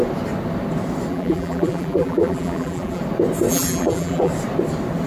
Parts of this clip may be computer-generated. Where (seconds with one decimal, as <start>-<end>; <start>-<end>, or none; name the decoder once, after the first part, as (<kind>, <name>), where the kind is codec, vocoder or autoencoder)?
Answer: 1.1-3.0 (vocoder, BigVGAN v2); 3.5-4.3

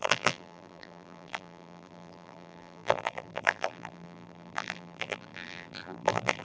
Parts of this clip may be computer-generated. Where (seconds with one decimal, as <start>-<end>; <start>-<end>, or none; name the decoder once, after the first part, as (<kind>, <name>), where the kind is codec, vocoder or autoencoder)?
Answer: 0.0-6.4 (vocoder, BigVGAN v2)

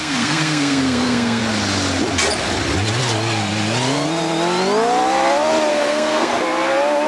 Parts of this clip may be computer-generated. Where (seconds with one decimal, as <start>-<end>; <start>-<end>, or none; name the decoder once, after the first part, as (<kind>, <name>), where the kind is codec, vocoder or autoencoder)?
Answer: 0.0-1.4 (codec, SNAC); 5.7-6.3

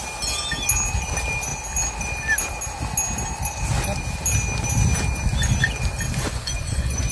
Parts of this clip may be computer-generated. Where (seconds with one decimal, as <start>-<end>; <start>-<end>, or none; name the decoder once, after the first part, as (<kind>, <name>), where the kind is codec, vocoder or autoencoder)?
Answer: 6.1-7.1 (vocoder, Vocos)

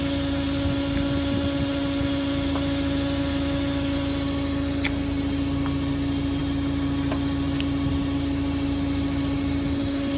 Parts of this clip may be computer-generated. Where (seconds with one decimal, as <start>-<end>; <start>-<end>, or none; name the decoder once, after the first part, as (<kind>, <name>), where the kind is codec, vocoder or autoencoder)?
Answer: none